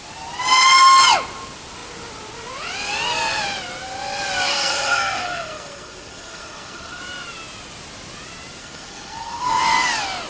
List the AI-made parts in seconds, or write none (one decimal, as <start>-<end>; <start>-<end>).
4.5-7.0; 8.6-9.6